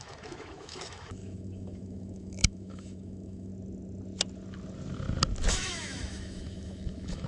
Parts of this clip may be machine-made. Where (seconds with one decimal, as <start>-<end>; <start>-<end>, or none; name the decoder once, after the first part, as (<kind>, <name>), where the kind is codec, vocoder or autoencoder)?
0.0-3.5 (autoencoder, DAC-VAE); 5.5-7.3